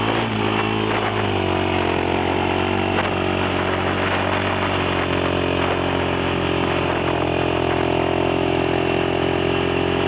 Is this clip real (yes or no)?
yes